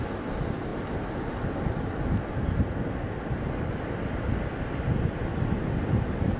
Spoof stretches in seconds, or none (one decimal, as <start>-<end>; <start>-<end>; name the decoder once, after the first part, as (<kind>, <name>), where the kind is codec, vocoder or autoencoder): none